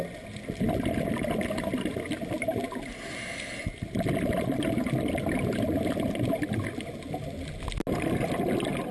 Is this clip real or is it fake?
real